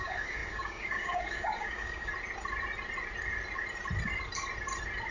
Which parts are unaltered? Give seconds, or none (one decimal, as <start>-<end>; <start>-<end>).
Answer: 2.1-5.1